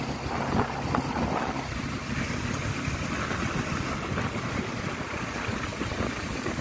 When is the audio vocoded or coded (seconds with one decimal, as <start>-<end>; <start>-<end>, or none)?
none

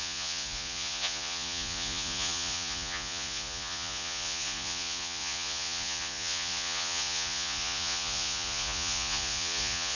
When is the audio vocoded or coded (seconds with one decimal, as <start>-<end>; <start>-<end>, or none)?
0.0-10.0

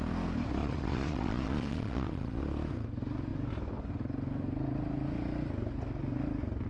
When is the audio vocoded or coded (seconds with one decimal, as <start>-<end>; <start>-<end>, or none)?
0.6-2.4